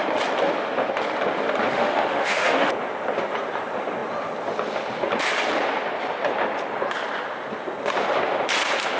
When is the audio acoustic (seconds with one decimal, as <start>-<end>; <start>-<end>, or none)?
0.0-1.7; 2.7-9.0